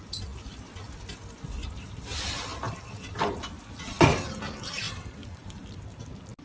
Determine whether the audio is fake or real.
real